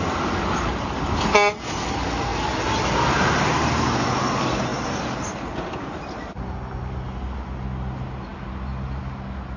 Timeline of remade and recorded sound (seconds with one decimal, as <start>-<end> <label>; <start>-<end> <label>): 0.0-9.6 recorded